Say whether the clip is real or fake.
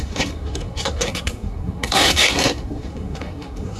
fake